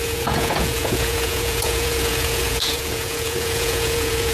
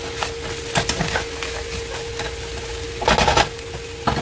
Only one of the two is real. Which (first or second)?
second